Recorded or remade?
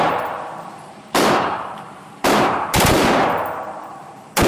remade